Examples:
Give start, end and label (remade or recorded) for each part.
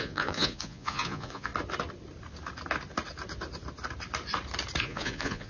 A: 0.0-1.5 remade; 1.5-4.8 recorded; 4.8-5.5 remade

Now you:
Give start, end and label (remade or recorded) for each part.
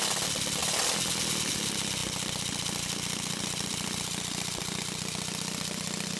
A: 0.0-6.2 recorded